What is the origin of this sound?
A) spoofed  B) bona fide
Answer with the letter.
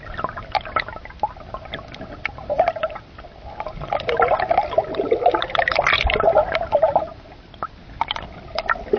B